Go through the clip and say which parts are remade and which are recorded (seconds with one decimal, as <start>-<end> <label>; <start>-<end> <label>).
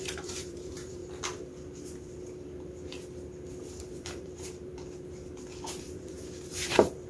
0.0-1.0 remade; 1.0-3.8 recorded; 3.8-4.7 remade; 4.7-5.8 recorded; 5.8-7.1 remade